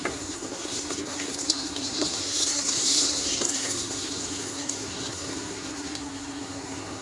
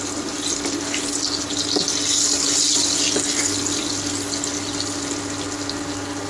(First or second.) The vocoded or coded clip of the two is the first